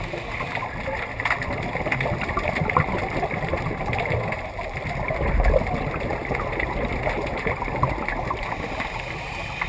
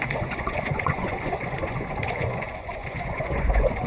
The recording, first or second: first